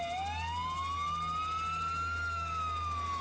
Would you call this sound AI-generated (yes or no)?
no